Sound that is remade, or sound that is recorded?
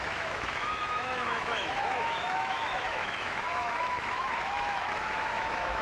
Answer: remade